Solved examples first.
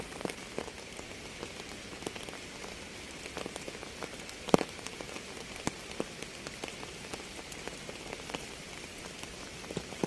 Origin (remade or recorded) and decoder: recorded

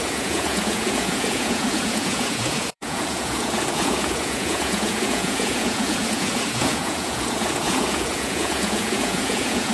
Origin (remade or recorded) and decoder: remade, vocoder, Vocos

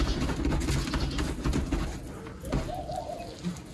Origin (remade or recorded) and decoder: recorded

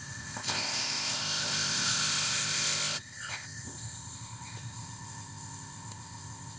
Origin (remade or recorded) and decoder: remade, codec, ZipCodec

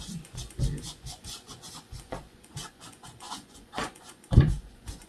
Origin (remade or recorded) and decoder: remade, vocoder, Vocos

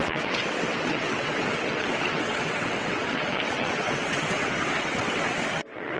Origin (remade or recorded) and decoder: remade, vocoder, WaveNeXt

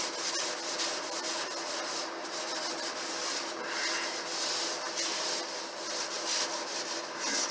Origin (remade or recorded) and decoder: recorded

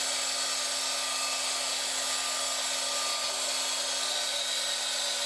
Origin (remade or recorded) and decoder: recorded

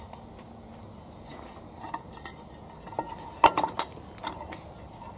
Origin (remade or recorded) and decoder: recorded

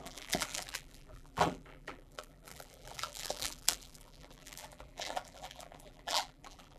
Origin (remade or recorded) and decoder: remade, vocoder, BigVGAN v2